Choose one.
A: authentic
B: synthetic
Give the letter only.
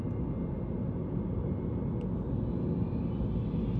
A